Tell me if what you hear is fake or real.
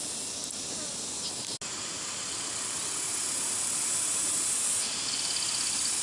real